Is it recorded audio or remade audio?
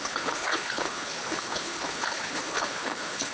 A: remade